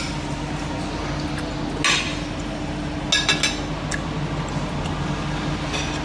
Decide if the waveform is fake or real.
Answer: real